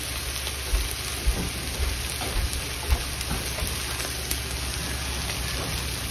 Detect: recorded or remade recorded